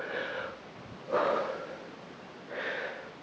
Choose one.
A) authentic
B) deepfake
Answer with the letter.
A